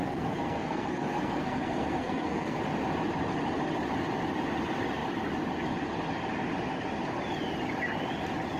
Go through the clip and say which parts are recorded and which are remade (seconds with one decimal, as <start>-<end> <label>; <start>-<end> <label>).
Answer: 0.0-2.6 remade; 2.6-8.6 recorded